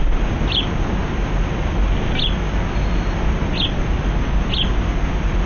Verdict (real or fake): real